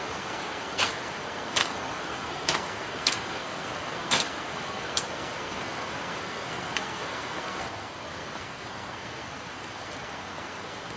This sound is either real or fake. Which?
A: fake